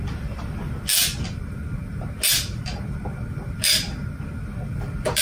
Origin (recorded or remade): recorded